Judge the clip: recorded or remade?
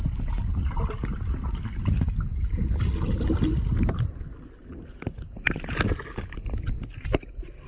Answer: recorded